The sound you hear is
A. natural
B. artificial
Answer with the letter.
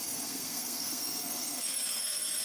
B